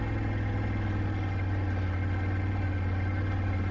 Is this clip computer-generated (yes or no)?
no